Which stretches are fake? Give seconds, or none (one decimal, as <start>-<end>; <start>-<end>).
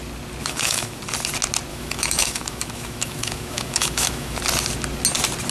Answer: 0.4-1.0; 1.7-4.4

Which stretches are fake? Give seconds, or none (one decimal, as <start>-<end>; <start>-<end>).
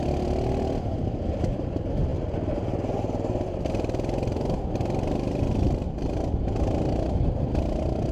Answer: none